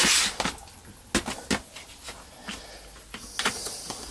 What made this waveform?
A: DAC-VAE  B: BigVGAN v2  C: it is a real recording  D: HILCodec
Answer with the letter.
C